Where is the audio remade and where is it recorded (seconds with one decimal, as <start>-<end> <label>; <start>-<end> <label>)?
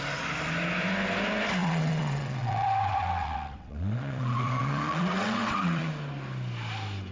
0.0-1.6 recorded; 1.6-5.9 remade; 5.9-7.1 recorded